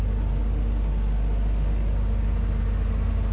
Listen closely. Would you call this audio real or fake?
real